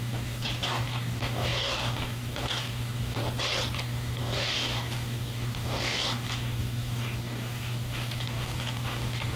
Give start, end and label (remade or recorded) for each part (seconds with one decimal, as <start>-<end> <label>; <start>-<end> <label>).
0.0-3.2 remade; 3.2-3.8 recorded; 3.8-9.4 remade